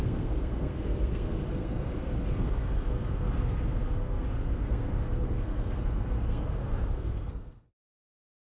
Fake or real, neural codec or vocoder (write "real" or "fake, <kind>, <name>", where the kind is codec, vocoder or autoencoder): fake, codec, SNAC